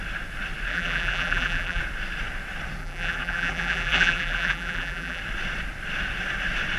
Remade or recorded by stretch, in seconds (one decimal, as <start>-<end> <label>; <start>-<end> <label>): 0.0-0.7 recorded; 0.7-1.8 remade; 1.8-2.8 recorded; 2.8-5.2 remade; 5.2-6.8 recorded